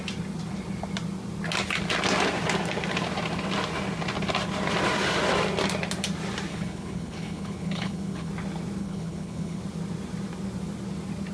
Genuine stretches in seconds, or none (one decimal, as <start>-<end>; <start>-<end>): 0.0-6.5; 8.3-8.8; 9.6-11.3